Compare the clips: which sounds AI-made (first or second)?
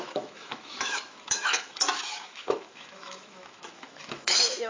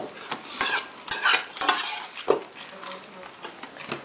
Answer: first